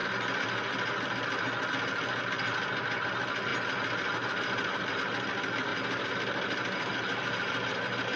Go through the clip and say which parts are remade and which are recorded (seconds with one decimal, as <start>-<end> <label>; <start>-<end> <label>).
0.0-8.2 recorded